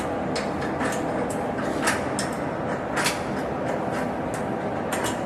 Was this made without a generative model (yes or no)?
yes